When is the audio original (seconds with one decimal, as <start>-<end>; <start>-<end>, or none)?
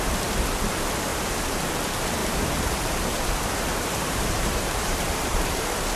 0.0-1.1; 1.7-2.2